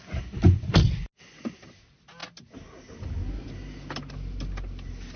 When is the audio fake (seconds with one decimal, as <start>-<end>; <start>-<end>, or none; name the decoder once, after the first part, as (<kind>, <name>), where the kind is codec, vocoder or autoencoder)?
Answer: none